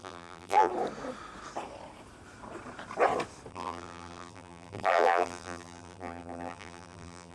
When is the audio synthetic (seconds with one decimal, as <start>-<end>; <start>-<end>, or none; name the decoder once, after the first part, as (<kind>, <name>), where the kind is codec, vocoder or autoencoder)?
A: 0.0-0.7 (vocoder, BigVGAN v2); 3.5-7.3